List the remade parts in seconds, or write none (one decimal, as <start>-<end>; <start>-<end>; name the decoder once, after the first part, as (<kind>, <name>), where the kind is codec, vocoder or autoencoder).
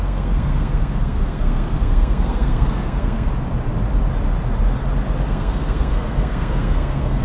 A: 0.0-3.3 (codec, SNAC); 5.3-7.2